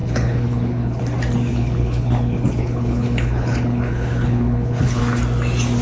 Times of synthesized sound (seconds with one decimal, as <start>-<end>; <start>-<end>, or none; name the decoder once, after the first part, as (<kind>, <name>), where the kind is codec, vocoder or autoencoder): 0.0-1.0 (codec, HILCodec); 1.5-5.0